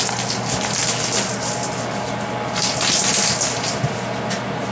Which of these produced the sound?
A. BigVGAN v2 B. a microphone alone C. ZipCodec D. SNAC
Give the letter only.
B